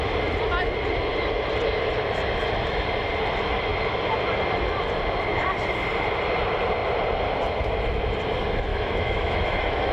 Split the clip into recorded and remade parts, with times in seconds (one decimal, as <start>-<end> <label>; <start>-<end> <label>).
0.0-8.7 recorded; 8.7-9.9 remade